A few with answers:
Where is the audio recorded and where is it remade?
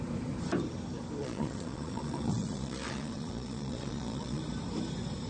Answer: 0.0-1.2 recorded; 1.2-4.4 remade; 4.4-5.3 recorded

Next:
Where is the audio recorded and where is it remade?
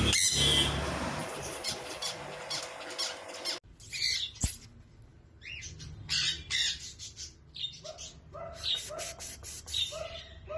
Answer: 0.0-1.2 recorded; 1.2-2.2 remade; 2.2-10.6 recorded